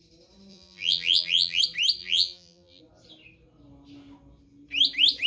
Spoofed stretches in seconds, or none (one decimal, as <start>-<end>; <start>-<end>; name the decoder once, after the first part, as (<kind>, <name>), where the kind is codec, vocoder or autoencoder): 0.5-1.6 (vocoder, BigVGAN v2); 2.0-2.8